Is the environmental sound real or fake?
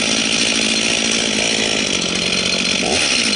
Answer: real